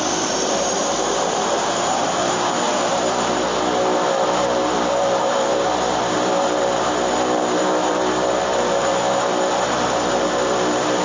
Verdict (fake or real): fake